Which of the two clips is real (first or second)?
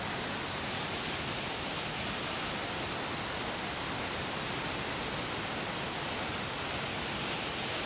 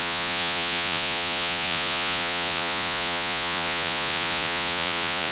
first